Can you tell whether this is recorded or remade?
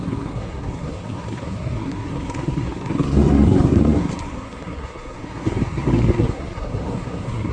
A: remade